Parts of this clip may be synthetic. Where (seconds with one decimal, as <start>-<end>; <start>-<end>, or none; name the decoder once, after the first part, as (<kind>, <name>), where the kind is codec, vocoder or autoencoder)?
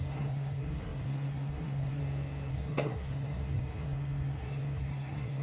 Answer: 0.0-2.0 (codec, SNAC); 2.5-5.4